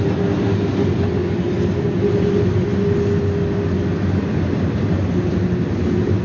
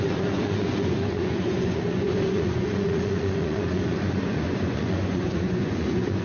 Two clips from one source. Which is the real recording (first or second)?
first